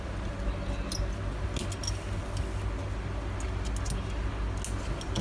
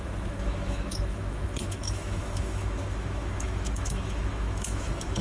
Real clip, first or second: first